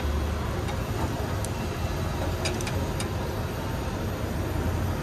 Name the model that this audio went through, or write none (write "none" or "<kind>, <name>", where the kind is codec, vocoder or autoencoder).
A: none